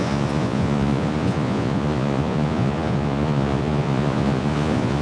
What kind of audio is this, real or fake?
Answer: fake